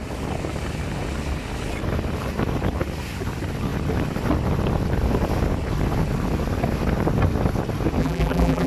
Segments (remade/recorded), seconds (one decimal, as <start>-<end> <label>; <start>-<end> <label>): 0.0-8.0 recorded; 8.0-8.7 remade